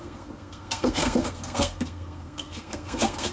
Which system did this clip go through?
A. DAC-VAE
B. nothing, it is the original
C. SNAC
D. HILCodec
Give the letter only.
C